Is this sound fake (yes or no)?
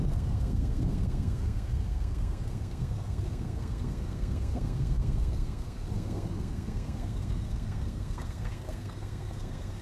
yes